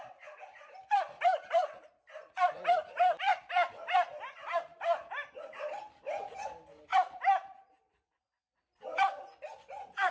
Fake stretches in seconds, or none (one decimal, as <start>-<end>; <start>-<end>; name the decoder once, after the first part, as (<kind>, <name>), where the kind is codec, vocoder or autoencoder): none